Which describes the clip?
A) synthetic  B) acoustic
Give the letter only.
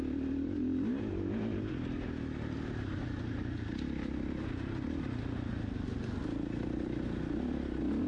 B